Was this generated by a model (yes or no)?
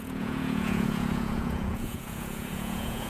yes